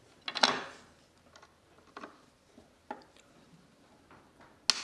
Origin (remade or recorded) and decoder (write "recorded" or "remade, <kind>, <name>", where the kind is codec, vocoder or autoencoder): recorded